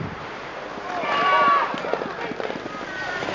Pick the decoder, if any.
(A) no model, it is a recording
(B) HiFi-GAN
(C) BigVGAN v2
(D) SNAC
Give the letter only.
A